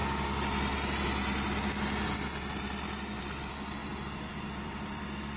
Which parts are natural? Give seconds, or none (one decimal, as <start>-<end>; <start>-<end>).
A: 0.0-3.2